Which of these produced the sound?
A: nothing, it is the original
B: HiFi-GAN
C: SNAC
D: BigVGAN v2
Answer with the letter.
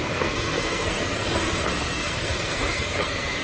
C